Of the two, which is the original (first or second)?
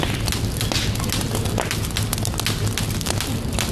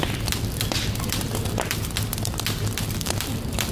first